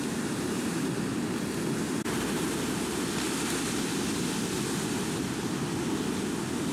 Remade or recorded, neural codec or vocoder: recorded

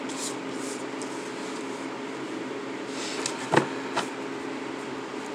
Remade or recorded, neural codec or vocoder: recorded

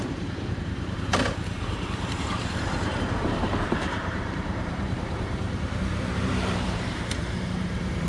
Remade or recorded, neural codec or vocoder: remade, vocoder, BigVGAN v2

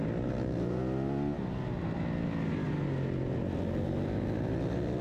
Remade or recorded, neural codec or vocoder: recorded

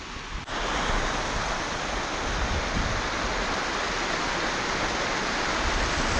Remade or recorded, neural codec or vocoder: recorded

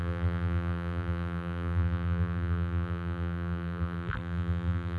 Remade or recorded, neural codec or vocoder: remade, vocoder, BigVGAN v2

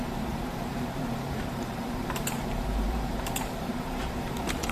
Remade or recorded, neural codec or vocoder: remade, vocoder, BigVGAN v2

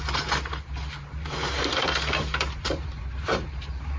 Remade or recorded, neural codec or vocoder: remade, vocoder, BigVGAN v2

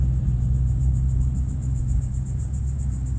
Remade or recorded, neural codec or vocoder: remade, vocoder, BigVGAN v2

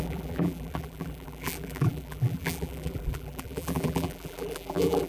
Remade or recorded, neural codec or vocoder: remade, vocoder, BigVGAN v2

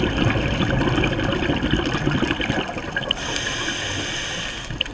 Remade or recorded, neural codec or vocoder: recorded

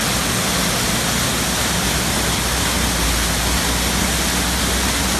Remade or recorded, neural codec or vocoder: recorded